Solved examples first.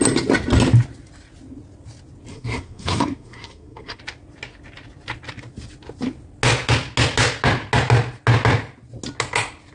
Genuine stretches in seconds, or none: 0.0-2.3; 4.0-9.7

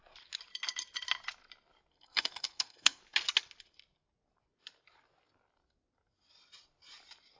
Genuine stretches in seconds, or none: 0.0-1.9; 3.0-7.4

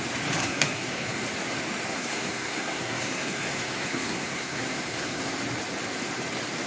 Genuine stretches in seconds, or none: 0.0-0.4; 1.2-1.9; 5.3-6.7

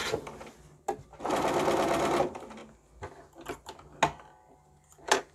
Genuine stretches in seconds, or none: 0.0-5.3

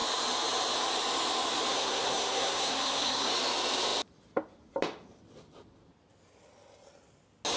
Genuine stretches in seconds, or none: 0.0-1.7; 3.3-7.6

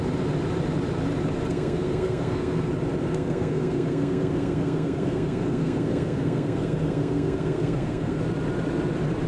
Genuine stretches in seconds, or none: 0.0-1.5; 2.7-3.1; 8.2-9.3

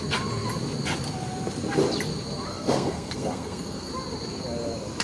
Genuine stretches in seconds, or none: 0.0-2.5; 3.9-5.0